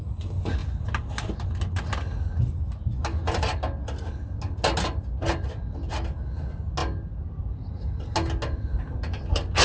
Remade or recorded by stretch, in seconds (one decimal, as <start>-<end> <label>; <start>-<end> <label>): 0.0-9.6 recorded